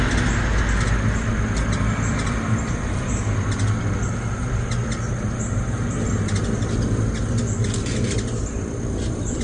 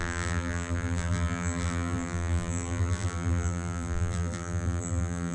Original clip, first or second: first